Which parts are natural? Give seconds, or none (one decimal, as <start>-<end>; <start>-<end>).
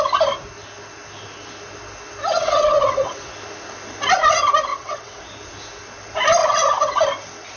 0.0-2.3; 3.3-4.7; 5.2-6.4; 7.0-7.6